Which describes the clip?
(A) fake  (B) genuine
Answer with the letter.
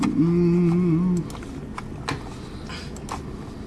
B